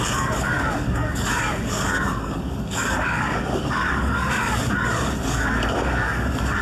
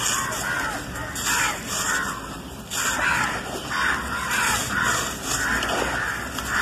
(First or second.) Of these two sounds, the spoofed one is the first